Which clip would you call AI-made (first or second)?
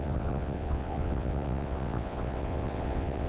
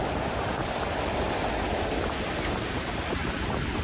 first